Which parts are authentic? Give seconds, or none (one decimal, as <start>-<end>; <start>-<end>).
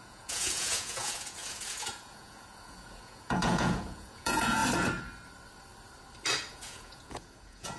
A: 4.6-6.5